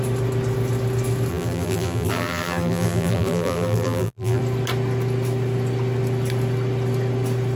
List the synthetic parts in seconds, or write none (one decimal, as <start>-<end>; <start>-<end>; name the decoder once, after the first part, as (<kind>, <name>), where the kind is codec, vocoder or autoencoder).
1.3-4.4 (vocoder, BigVGAN v2)